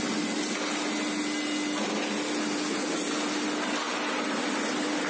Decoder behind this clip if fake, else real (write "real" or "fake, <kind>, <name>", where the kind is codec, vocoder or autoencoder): real